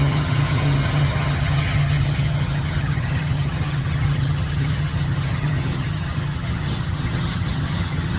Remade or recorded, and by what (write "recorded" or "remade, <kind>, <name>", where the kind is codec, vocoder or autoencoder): remade, vocoder, HiFi-GAN